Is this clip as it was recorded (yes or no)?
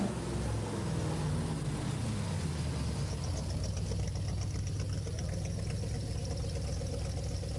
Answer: yes